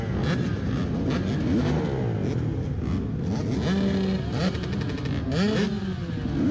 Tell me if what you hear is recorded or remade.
recorded